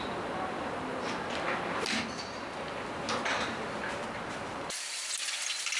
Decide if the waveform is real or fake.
real